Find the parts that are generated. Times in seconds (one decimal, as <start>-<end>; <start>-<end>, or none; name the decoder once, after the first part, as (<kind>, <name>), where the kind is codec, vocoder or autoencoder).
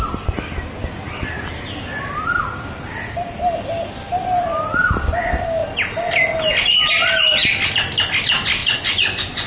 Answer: 8.6-9.5 (vocoder, Vocos)